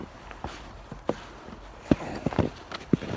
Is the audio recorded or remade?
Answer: recorded